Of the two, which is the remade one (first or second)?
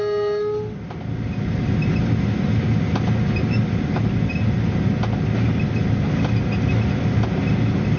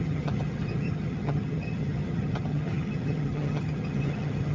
second